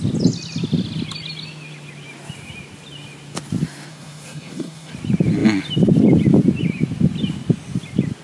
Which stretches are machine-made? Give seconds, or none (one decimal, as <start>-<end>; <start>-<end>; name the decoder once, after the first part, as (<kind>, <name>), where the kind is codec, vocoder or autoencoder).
3.9-4.9 (codec, SNAC)